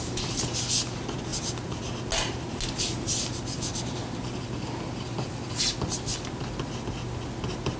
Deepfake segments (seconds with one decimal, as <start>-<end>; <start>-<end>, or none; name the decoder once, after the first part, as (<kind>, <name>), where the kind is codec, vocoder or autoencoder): none